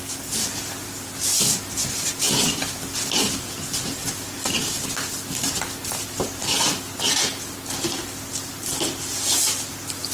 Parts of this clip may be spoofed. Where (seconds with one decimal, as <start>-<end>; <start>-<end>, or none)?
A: 0.0-1.3; 2.5-7.3; 8.3-10.1